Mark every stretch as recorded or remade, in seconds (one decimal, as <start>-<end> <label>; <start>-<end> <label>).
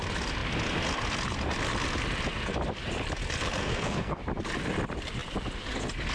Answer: 0.0-3.6 recorded; 3.6-4.2 remade; 4.2-6.1 recorded